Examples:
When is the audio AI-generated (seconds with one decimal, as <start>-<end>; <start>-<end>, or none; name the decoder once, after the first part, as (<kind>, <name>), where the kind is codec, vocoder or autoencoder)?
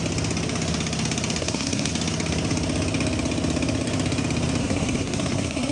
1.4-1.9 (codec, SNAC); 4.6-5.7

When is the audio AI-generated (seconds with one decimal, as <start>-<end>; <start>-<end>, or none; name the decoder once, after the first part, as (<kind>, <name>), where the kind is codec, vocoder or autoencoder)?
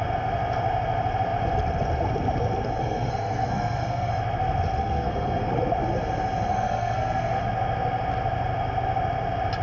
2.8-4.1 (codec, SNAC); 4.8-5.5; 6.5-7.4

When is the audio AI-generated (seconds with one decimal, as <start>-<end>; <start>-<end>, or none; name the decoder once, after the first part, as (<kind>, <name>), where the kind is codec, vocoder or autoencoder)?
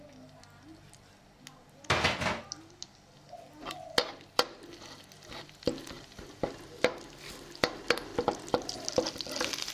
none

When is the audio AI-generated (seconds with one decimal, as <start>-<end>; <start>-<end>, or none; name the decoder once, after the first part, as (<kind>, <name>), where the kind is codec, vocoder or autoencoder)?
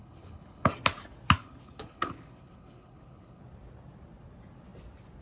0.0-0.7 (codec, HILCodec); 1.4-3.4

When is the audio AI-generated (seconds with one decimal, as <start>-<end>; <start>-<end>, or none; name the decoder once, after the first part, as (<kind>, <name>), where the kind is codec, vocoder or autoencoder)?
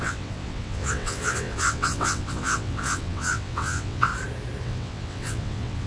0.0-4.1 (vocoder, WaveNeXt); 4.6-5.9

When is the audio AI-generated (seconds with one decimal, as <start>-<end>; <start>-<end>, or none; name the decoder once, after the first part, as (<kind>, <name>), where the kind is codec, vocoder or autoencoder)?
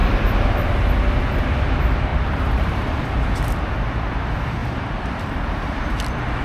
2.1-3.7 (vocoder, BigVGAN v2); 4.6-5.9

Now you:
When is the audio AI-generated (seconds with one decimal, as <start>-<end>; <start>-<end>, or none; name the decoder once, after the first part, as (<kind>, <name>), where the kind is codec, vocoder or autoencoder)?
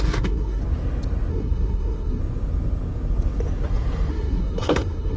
0.0-0.6 (codec, SNAC); 1.3-2.2; 4.1-5.2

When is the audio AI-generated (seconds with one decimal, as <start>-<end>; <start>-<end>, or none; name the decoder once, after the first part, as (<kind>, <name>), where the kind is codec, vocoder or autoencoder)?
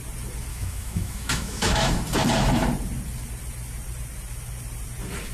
0.5-1.9 (autoencoder, DAC-VAE)